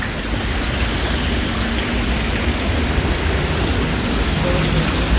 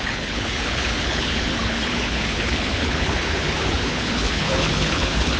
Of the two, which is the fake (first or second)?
second